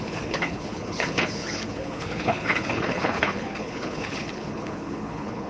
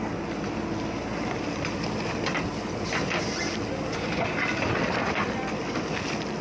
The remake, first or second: first